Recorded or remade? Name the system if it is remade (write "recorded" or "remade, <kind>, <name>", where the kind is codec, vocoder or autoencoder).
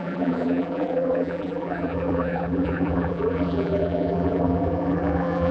remade, vocoder, BigVGAN v2